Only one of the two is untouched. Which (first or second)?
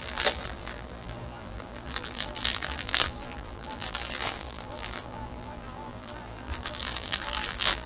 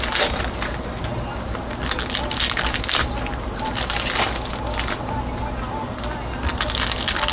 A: second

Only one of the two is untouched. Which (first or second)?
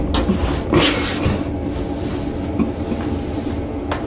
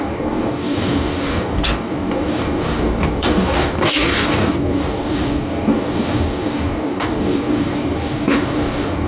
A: first